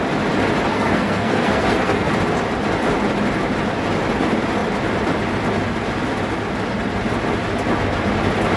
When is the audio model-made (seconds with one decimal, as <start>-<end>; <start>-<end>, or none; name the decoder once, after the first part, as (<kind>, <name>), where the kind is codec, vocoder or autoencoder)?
0.7-2.1 (codec, SNAC)